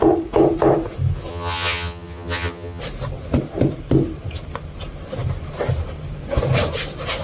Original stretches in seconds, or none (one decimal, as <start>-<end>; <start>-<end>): 0.0-1.3; 2.8-7.2